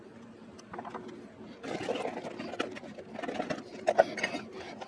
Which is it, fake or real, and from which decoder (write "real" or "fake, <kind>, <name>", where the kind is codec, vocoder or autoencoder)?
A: real